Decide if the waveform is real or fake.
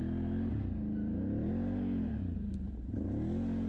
real